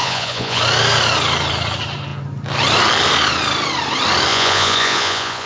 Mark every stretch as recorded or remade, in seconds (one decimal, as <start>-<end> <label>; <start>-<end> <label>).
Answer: 0.0-0.6 remade; 0.6-4.3 recorded; 4.3-5.5 remade